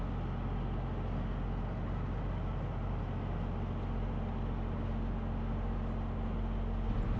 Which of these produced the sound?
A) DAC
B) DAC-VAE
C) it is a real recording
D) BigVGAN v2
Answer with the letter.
C